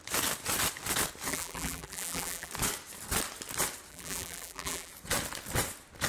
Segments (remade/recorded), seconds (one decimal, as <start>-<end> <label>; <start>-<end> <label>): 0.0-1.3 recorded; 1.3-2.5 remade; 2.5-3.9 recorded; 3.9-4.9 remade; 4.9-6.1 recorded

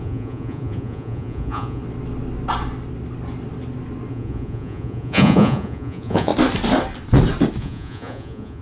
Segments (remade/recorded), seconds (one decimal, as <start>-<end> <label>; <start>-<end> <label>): 0.0-1.8 remade; 1.8-4.1 recorded; 4.1-6.3 remade; 6.3-7.6 recorded; 7.6-8.6 remade

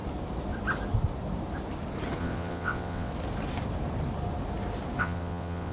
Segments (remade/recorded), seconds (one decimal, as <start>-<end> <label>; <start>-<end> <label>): 0.0-2.2 recorded; 2.2-3.1 remade; 3.1-5.0 recorded; 5.0-5.7 remade

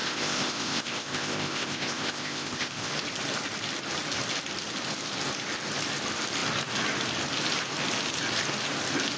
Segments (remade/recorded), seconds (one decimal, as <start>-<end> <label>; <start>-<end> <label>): 0.0-2.9 remade; 2.9-9.2 recorded